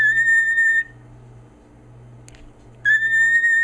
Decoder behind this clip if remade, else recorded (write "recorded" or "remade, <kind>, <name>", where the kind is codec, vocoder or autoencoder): recorded